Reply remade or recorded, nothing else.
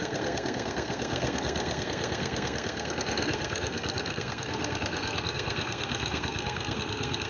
remade